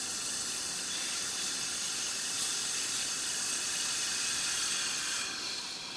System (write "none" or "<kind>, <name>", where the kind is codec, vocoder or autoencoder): none